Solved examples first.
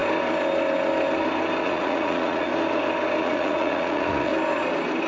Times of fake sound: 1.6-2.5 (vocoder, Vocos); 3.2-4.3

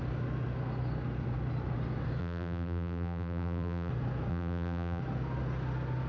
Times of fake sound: 2.2-3.9 (vocoder, BigVGAN v2); 4.3-5.0

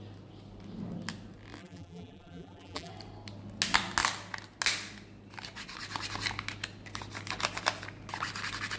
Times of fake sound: 1.6-2.9 (vocoder, BigVGAN v2)

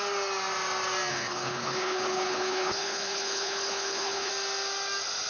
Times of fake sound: 1.1-4.3 (codec, HILCodec)

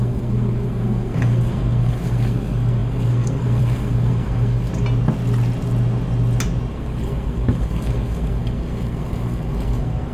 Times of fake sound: 0.0-4.7 (codec, SNAC); 6.7-10.1